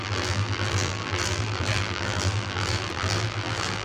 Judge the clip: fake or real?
fake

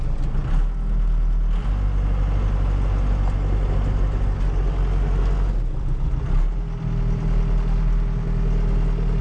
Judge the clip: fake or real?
real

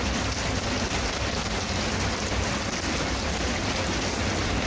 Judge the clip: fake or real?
real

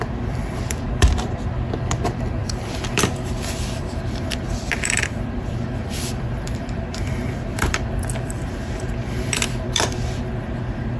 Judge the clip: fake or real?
fake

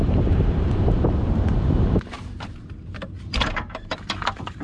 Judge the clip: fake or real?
fake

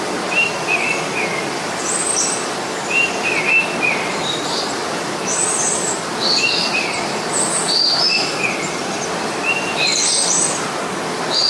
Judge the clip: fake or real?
fake